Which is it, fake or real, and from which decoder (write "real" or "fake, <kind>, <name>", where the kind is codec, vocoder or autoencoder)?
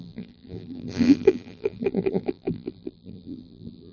fake, vocoder, BigVGAN v2